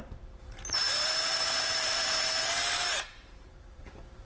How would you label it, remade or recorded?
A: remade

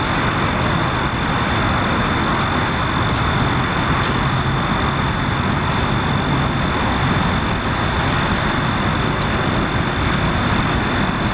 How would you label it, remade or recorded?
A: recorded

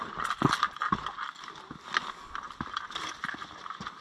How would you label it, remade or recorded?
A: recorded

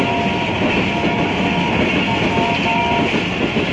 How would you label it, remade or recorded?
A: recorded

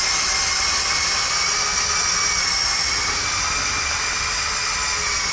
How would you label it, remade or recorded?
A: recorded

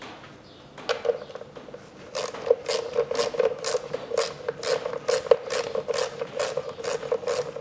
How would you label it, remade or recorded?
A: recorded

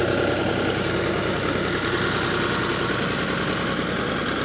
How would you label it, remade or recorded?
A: recorded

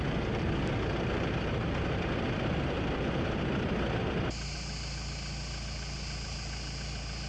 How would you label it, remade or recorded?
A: recorded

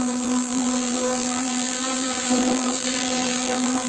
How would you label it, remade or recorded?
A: remade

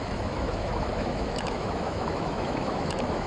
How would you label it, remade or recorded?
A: remade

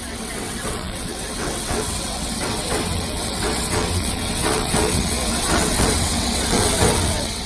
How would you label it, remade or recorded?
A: remade